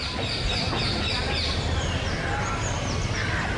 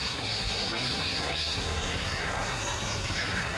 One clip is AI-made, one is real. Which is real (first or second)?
first